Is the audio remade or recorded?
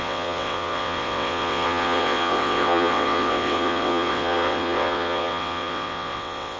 remade